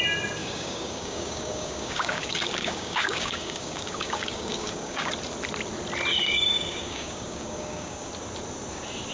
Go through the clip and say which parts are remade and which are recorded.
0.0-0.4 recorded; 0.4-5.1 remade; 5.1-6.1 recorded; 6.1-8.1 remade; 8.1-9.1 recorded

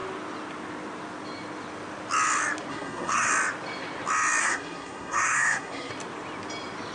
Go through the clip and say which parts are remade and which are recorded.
0.0-2.7 recorded; 2.7-3.3 remade; 3.3-4.4 recorded; 4.4-5.9 remade; 5.9-6.9 recorded

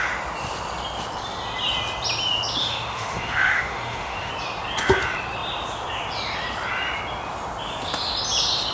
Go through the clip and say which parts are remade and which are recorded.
0.0-2.6 recorded; 2.6-4.3 remade; 4.3-8.7 recorded

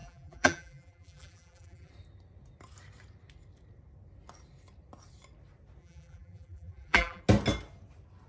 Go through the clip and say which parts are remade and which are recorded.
0.0-1.9 remade; 1.9-5.8 recorded; 5.8-7.2 remade; 7.2-8.3 recorded